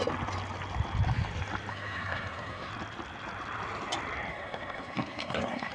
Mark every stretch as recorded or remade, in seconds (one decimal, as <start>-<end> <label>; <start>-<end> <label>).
0.0-1.7 recorded; 1.7-2.7 remade; 2.7-4.3 recorded; 4.3-5.7 remade